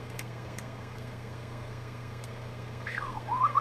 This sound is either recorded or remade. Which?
remade